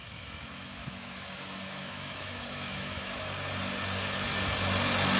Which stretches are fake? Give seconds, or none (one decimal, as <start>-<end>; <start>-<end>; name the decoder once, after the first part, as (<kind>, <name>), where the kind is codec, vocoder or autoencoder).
0.0-3.1 (autoencoder, DAC-VAE)